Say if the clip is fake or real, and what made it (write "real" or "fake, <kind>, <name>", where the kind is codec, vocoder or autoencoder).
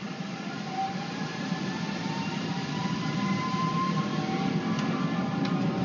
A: fake, vocoder, BigVGAN v2